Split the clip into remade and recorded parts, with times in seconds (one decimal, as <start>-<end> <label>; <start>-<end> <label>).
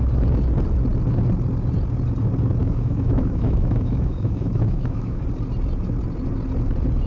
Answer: 0.0-2.6 recorded; 2.6-5.2 remade; 5.2-7.1 recorded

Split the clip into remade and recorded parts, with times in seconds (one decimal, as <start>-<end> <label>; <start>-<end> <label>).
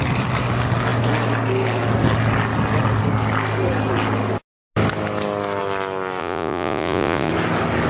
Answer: 0.0-6.2 recorded; 6.2-7.3 remade; 7.3-7.9 recorded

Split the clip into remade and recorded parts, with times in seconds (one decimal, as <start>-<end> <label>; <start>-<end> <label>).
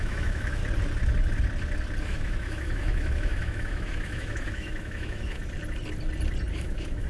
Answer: 0.0-0.6 remade; 0.6-2.0 recorded; 2.0-5.4 remade; 5.4-6.5 recorded; 6.5-7.1 remade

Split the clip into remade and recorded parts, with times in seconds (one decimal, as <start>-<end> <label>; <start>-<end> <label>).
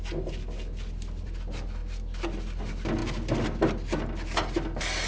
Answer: 0.0-5.1 recorded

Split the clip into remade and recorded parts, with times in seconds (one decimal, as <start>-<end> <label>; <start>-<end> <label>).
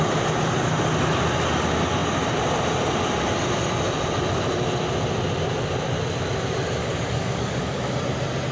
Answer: 0.0-6.8 recorded; 6.8-7.9 remade; 7.9-8.5 recorded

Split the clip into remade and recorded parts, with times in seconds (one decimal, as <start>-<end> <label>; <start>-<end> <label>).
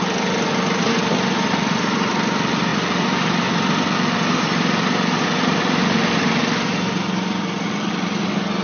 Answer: 0.0-2.7 recorded; 2.7-7.9 remade; 7.9-8.6 recorded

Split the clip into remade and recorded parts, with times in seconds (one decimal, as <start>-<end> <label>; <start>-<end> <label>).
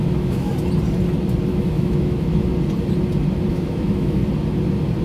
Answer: 0.0-0.5 remade; 0.5-1.5 recorded; 1.5-2.5 remade; 2.5-3.5 recorded; 3.5-4.2 remade; 4.2-5.0 recorded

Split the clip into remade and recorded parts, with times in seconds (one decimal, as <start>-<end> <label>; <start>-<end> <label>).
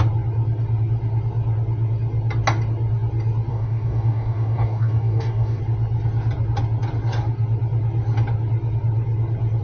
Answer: 0.0-3.5 recorded; 3.5-5.6 remade; 5.6-9.6 recorded